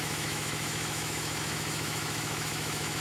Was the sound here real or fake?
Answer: fake